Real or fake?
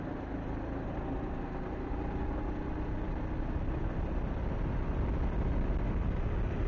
real